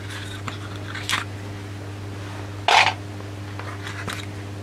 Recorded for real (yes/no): yes